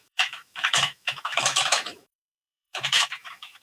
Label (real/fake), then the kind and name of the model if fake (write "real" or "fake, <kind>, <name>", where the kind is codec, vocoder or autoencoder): fake, autoencoder, DAC-VAE